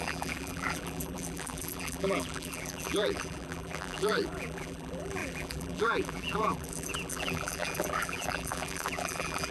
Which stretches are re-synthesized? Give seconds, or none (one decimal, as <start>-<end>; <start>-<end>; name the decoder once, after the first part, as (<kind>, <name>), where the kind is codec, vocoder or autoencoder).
0.0-9.5 (vocoder, BigVGAN v2)